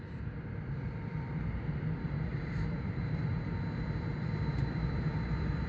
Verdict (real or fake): fake